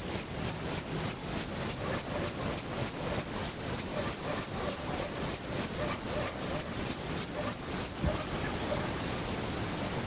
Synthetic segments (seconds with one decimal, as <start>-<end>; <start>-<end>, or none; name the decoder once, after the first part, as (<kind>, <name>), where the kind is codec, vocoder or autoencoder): none